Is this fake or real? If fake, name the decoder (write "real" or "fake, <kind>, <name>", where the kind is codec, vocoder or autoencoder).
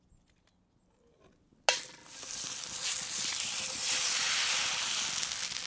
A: real